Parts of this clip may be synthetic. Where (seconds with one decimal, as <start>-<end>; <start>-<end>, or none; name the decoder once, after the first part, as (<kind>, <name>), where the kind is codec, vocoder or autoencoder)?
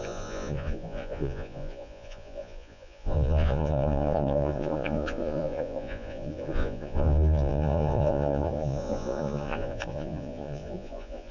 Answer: 0.0-11.3 (vocoder, Vocos)